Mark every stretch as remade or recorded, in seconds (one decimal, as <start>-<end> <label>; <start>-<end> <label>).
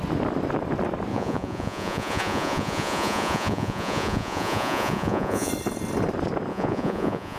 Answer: 0.0-1.1 recorded; 1.1-5.5 remade; 5.5-6.5 recorded; 6.5-7.4 remade